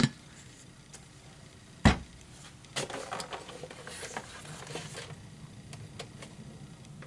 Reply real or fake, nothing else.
real